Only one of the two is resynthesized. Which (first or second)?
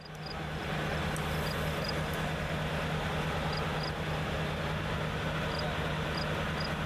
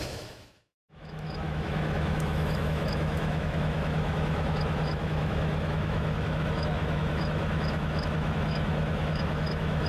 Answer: second